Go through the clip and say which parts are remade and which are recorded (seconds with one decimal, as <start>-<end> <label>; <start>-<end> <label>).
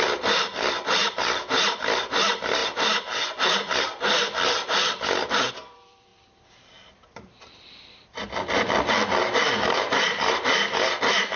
0.0-11.4 remade